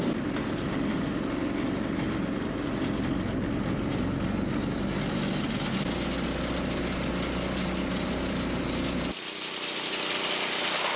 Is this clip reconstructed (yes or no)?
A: no